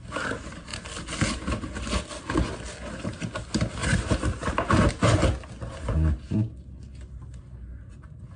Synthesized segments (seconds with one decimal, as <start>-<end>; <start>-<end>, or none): none